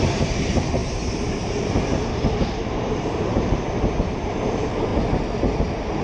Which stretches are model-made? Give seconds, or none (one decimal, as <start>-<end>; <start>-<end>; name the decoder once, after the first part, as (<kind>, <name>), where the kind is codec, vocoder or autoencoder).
0.0-4.9 (vocoder, BigVGAN v2)